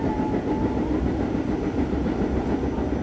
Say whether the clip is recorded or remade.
recorded